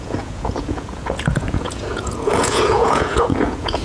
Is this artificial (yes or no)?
yes